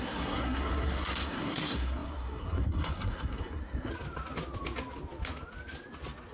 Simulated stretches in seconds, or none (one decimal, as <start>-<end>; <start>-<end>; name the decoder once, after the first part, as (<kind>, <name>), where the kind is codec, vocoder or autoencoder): 0.0-3.9 (codec, SNAC)